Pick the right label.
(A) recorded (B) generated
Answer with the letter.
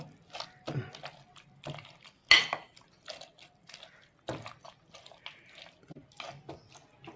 A